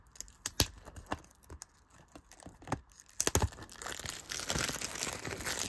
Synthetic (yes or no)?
no